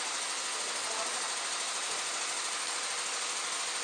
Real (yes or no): yes